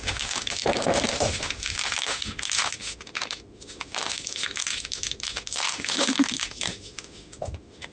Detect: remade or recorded remade